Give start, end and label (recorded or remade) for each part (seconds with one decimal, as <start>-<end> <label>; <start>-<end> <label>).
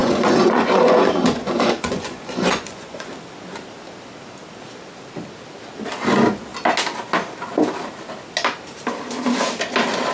0.0-3.1 remade; 3.1-10.1 recorded